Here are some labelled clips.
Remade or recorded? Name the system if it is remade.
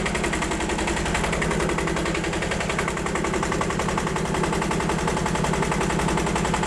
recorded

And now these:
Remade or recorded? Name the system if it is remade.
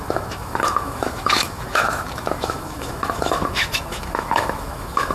remade, autoencoder, DAC-VAE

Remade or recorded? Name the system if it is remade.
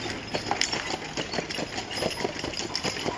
recorded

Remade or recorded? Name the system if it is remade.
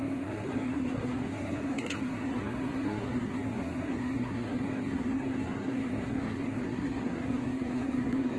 remade, codec, SNAC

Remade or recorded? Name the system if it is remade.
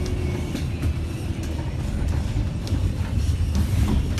recorded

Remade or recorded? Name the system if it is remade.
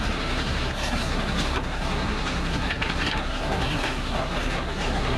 remade, codec, SNAC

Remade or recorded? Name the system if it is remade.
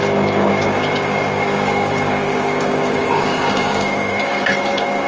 remade, codec, DAC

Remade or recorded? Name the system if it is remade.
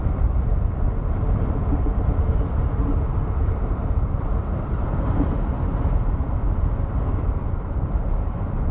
recorded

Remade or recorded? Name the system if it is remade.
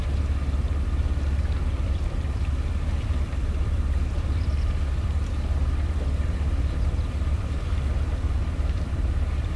remade, vocoder, BigVGAN v2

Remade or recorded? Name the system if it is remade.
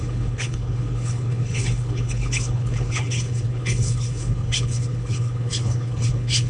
remade, codec, HILCodec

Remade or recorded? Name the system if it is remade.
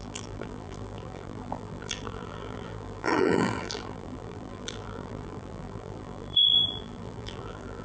remade, vocoder, BigVGAN v2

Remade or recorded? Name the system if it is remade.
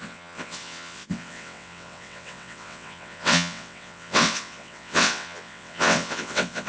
remade, vocoder, WaveNeXt